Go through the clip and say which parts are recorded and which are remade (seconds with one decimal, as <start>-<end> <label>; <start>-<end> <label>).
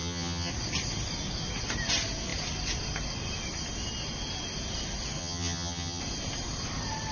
0.0-0.5 remade; 0.5-5.2 recorded; 5.2-6.0 remade; 6.0-7.1 recorded